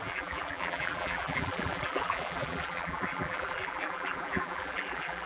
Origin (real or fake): fake